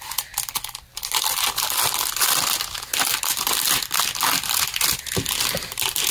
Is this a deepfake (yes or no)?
no